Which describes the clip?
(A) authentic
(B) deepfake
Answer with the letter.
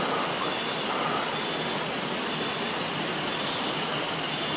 A